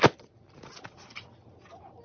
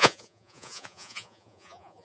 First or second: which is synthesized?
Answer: second